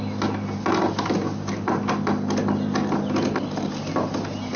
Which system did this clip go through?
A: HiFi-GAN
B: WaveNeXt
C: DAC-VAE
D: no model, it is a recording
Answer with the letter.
D